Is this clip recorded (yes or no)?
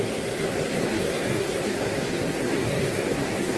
no